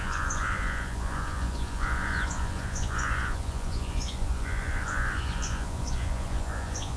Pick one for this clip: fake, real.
fake